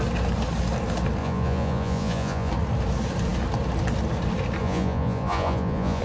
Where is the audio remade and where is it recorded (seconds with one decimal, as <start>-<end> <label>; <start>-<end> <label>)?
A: 0.0-1.2 recorded; 1.2-2.5 remade; 2.5-4.6 recorded; 4.6-6.0 remade